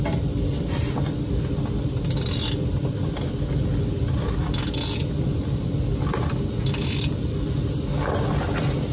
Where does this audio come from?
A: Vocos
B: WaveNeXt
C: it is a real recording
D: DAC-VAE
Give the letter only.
C